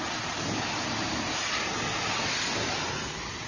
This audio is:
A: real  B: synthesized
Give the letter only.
A